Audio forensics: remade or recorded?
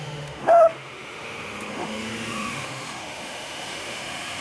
remade